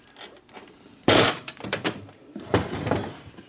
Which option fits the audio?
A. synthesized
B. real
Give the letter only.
A